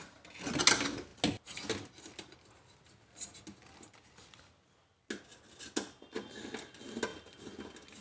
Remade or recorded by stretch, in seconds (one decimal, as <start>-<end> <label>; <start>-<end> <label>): 0.0-8.0 recorded

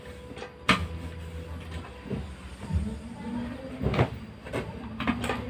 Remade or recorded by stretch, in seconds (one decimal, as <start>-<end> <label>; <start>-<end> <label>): 0.0-5.5 recorded

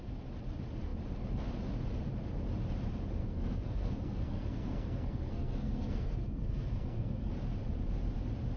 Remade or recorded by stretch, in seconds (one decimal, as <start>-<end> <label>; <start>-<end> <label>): 0.0-3.2 recorded; 3.2-7.3 remade; 7.3-8.6 recorded